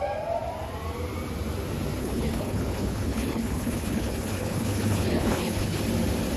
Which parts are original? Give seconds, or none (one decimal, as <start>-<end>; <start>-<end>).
0.0-2.0; 5.8-6.4